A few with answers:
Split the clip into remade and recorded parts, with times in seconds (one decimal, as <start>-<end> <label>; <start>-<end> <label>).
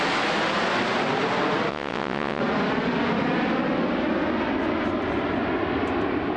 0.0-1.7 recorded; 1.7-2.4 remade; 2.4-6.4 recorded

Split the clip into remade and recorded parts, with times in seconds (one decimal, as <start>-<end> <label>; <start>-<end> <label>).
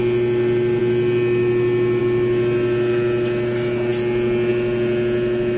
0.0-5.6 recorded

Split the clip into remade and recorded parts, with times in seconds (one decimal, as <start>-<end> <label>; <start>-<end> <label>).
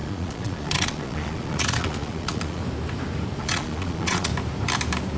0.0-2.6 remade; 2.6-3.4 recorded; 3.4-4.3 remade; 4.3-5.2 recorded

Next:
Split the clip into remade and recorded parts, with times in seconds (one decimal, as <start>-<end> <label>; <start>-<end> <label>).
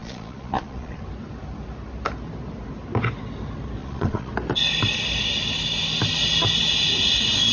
0.0-1.0 remade; 1.0-3.8 recorded; 3.8-4.3 remade; 4.3-7.5 recorded